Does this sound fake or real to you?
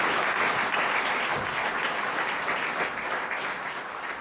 real